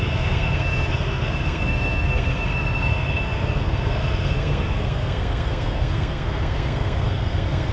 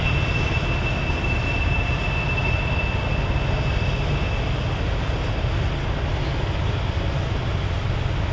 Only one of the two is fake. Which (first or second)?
first